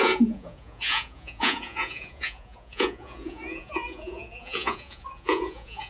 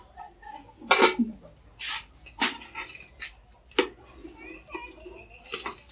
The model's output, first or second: first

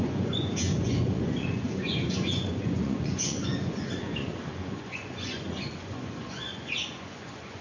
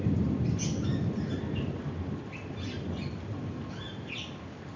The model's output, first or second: first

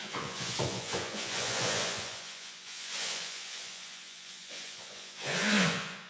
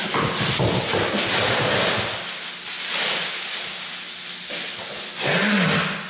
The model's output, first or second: first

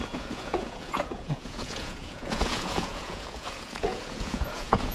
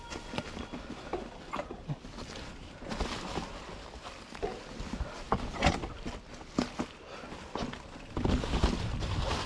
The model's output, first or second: first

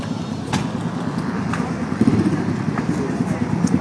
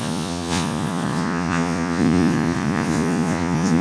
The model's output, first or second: second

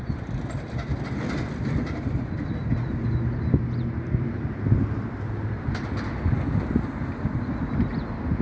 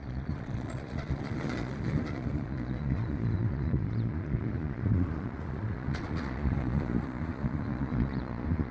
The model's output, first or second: second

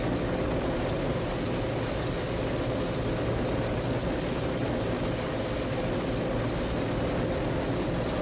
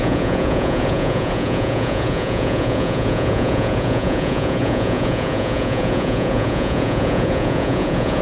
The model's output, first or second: second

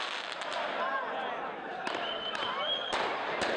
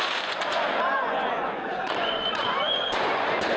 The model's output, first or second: second